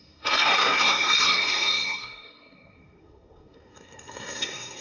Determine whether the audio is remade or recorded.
remade